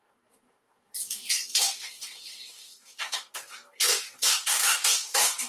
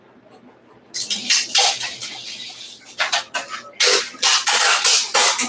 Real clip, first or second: second